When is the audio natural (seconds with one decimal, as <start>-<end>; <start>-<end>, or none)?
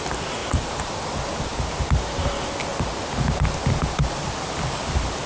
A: 0.0-0.4; 1.0-1.5; 2.3-5.3